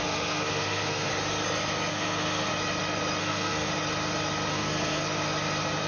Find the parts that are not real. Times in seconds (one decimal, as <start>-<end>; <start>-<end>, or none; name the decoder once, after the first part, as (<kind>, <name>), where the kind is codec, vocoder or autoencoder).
0.0-1.1 (codec, SNAC); 1.9-2.5; 3.2-3.7; 4.5-5.0